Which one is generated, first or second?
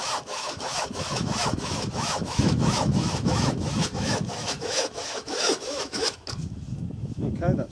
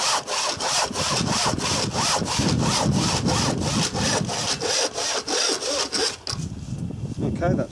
first